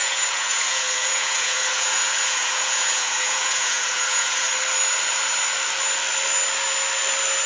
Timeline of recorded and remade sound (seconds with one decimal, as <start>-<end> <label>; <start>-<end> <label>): 0.0-4.5 remade; 4.5-7.5 recorded